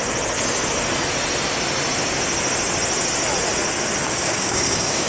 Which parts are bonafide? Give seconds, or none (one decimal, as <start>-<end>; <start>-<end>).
0.0-4.0